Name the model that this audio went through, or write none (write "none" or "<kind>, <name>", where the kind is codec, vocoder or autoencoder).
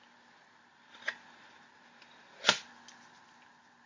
none